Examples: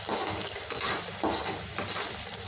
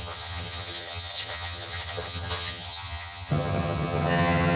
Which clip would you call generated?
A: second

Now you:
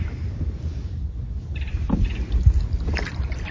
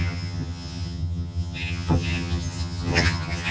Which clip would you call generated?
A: second